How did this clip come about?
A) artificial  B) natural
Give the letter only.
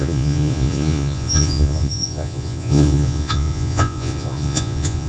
A